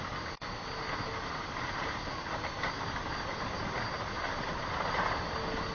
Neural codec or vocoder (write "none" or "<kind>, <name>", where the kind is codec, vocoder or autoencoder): none